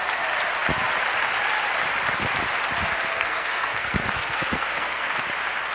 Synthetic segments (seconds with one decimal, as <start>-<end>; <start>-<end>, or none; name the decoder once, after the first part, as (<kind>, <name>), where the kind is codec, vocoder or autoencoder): 3.1-5.1 (codec, SNAC)